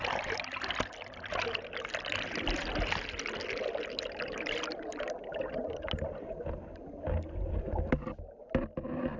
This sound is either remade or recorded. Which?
recorded